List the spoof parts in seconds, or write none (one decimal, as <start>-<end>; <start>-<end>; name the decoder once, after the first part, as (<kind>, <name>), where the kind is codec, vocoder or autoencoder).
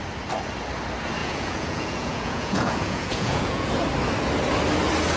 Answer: 1.2-3.7 (vocoder, Vocos)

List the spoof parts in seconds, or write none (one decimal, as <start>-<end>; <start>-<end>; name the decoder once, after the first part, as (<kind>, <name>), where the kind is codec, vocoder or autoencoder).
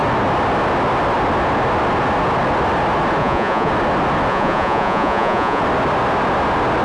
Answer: 3.2-3.7 (vocoder, Vocos); 4.3-5.6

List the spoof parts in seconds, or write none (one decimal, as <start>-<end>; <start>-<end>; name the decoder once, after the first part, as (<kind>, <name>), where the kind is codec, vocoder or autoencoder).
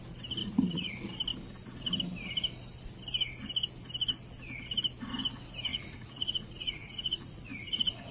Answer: 0.4-0.9 (vocoder, Vocos); 5.7-8.1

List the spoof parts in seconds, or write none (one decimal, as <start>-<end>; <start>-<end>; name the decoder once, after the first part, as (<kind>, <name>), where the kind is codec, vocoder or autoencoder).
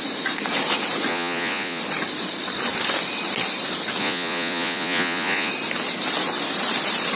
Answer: 1.1-1.8 (vocoder, Vocos); 4.0-5.5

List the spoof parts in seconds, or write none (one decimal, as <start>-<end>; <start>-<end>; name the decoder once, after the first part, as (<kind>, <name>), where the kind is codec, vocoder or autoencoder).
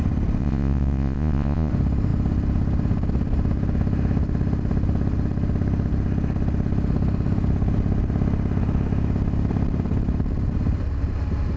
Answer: 0.4-1.7 (vocoder, Vocos)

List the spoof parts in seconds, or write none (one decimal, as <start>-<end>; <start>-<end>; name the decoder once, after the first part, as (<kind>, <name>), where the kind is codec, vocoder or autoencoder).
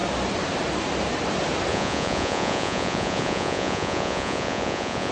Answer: 1.7-5.1 (vocoder, Vocos)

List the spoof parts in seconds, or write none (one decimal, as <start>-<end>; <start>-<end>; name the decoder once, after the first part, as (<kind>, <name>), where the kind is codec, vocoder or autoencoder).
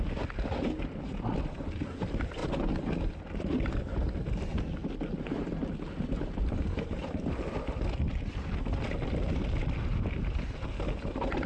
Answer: none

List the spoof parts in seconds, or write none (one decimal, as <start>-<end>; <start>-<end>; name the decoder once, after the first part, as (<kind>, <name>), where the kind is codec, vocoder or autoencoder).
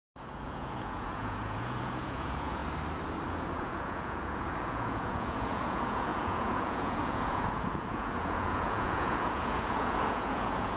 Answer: 0.0-2.6 (vocoder, Vocos); 3.3-10.8